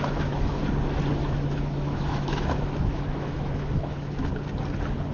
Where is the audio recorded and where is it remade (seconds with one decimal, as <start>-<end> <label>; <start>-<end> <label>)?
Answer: 0.0-0.6 remade; 0.6-1.2 recorded; 1.2-4.3 remade; 4.3-5.1 recorded